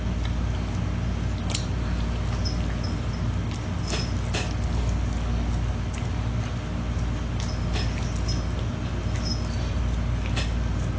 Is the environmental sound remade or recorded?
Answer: recorded